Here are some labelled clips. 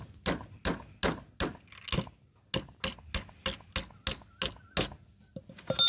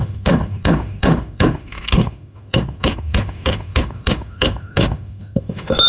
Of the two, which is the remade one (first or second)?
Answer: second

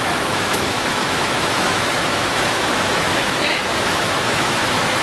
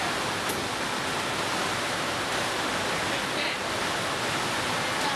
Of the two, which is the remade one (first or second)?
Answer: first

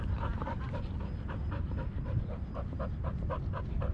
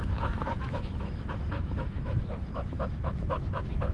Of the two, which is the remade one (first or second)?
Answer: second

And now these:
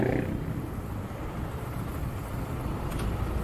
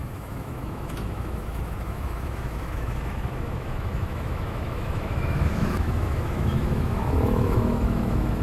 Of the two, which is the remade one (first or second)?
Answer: second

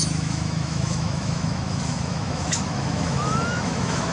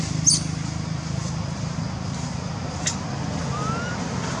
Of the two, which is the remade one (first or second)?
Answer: first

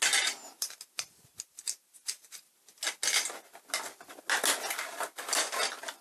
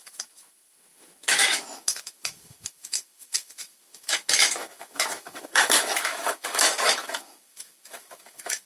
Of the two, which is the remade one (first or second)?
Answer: second